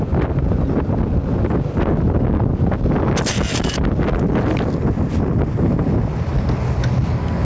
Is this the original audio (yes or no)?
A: yes